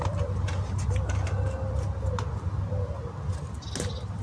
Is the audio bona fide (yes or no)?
yes